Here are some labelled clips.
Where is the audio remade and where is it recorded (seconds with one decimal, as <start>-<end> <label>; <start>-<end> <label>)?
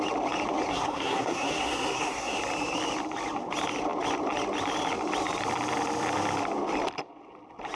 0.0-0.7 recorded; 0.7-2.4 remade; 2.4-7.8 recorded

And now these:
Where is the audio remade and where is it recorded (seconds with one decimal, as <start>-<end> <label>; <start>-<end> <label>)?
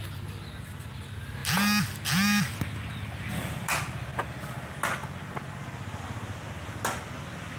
0.0-7.6 recorded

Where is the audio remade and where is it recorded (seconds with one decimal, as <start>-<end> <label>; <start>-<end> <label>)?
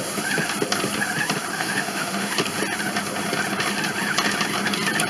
0.0-1.5 recorded; 1.5-2.3 remade; 2.3-5.1 recorded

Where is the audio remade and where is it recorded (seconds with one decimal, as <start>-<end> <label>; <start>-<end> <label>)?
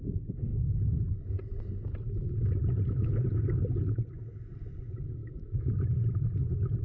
0.0-5.2 recorded; 5.2-5.7 remade; 5.7-6.8 recorded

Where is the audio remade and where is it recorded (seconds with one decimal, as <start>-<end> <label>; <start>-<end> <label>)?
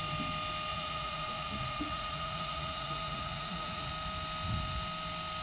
0.0-0.7 recorded; 0.7-3.9 remade; 3.9-5.4 recorded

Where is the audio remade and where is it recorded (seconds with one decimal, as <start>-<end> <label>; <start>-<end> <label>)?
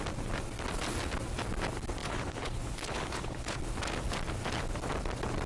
0.0-2.0 recorded; 2.0-3.6 remade; 3.6-5.5 recorded